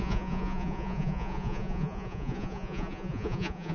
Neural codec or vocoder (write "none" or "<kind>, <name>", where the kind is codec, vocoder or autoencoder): vocoder, Vocos